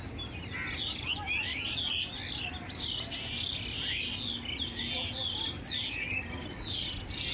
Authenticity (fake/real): real